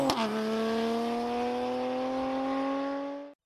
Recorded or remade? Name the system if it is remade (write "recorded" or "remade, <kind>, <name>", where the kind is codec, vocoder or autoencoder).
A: recorded